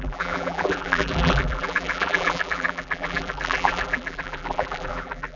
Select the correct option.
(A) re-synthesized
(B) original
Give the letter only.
A